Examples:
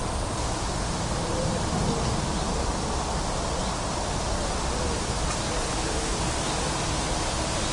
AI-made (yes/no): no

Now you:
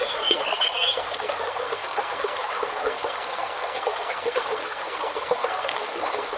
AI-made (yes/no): yes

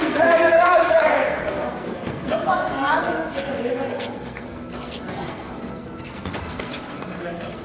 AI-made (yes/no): yes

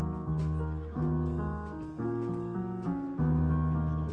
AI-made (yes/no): no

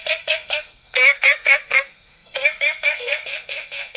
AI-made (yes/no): yes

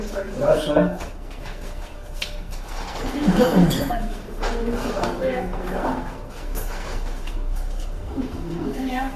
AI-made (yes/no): yes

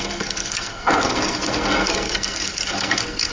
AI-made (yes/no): yes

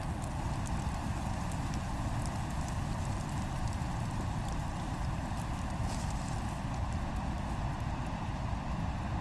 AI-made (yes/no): no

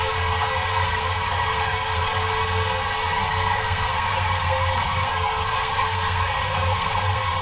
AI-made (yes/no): yes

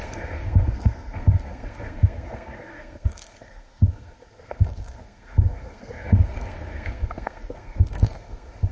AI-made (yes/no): yes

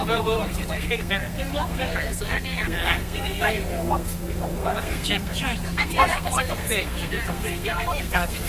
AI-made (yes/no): yes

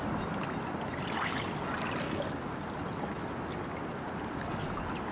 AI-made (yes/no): no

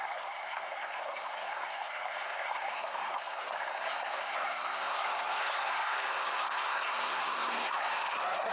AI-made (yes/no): yes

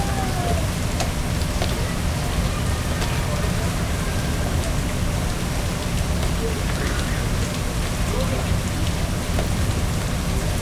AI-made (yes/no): no